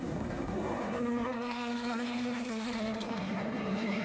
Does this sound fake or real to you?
fake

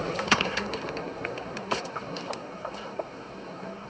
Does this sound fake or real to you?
fake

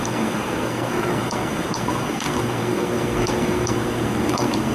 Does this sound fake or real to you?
fake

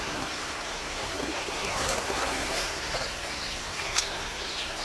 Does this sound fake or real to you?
fake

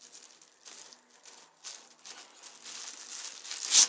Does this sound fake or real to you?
real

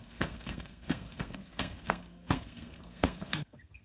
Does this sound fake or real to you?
fake